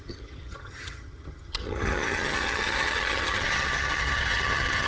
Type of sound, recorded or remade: remade